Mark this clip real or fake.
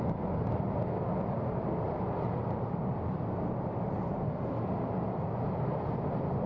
real